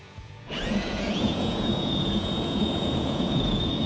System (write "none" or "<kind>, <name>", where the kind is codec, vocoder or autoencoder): vocoder, Vocos